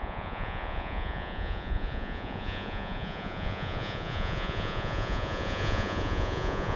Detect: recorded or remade remade